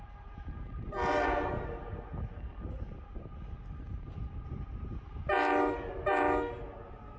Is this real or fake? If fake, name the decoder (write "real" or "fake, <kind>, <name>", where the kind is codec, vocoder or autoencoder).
real